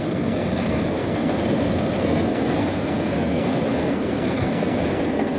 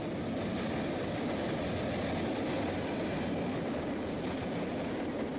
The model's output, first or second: first